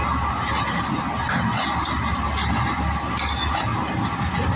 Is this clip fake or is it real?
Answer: real